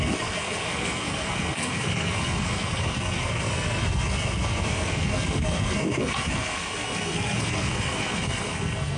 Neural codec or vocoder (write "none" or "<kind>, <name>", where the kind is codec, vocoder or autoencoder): codec, SNAC